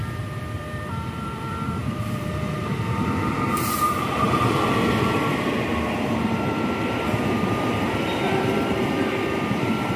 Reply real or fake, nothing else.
fake